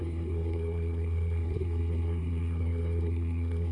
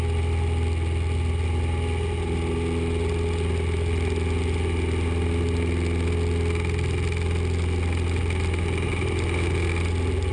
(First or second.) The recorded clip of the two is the second